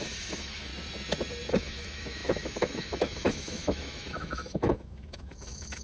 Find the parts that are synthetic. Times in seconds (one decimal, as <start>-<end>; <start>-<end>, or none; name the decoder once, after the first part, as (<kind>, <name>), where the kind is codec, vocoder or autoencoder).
0.0-0.7 (autoencoder, DAC-VAE); 1.5-5.8